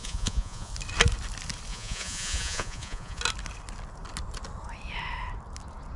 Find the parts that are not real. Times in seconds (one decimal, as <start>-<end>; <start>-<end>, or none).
0.0-0.7; 1.7-3.2